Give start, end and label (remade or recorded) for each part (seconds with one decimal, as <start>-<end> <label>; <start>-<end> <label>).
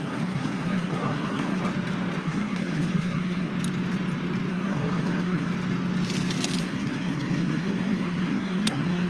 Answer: 0.0-1.6 remade; 1.6-2.2 recorded; 2.2-3.5 remade; 3.5-4.5 recorded; 4.5-5.5 remade; 5.5-6.6 recorded; 6.6-9.1 remade